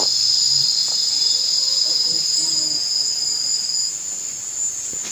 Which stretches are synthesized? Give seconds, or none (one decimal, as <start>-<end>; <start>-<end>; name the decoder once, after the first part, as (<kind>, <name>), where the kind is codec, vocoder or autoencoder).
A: 0.8-3.1 (vocoder, Vocos)